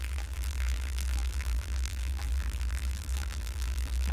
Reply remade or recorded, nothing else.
remade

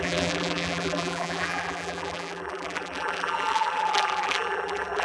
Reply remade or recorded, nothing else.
remade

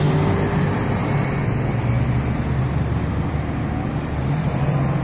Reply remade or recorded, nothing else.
recorded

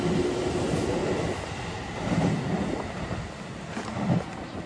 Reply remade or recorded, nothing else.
recorded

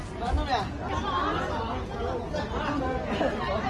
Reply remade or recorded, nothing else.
recorded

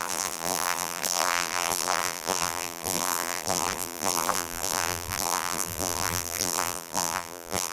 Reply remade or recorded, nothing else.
remade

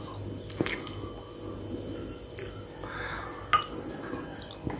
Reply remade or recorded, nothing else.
recorded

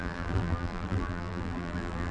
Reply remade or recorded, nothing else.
remade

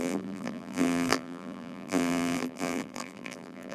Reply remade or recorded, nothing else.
remade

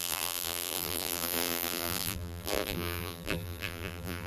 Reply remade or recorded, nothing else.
remade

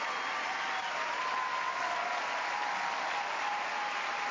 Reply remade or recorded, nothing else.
recorded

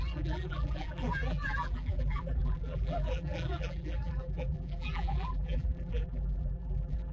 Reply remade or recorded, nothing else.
remade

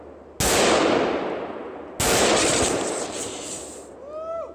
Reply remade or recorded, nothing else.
recorded